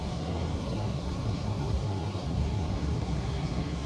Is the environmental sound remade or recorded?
remade